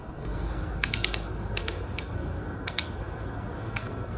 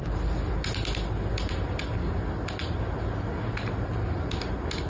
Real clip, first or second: second